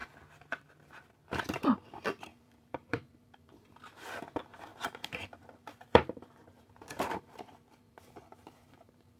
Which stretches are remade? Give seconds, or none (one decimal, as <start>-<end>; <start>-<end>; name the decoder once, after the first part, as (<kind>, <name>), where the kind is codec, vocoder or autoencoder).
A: 2.3-4.1 (vocoder, BigVGAN v2); 4.7-9.2